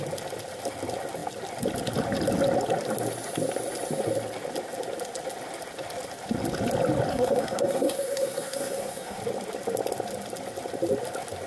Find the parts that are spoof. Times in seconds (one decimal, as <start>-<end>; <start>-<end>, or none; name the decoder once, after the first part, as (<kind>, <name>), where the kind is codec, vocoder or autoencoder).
7.1-9.2 (codec, SNAC)